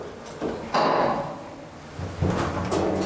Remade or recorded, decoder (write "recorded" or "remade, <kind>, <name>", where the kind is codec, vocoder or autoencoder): recorded